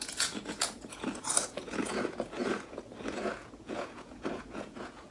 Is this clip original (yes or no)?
no